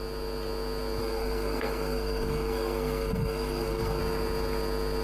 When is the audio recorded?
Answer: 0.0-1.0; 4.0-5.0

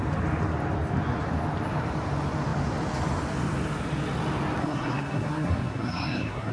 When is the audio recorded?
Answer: 0.0-4.6

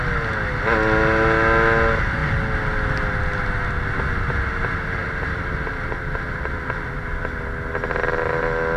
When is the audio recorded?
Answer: 0.0-8.8

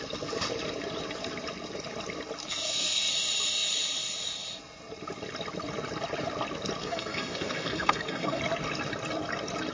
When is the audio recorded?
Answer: 0.0-2.5; 3.1-6.8; 8.4-9.7

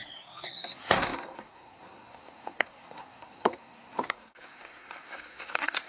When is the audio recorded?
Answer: none

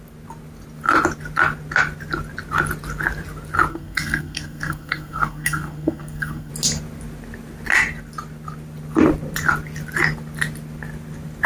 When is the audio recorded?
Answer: 0.0-3.7; 6.5-11.5